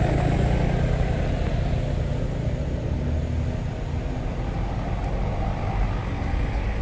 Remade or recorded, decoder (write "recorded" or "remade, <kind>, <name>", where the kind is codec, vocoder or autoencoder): recorded